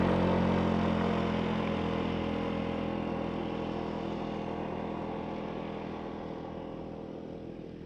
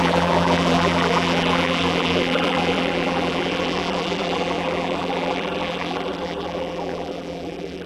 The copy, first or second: second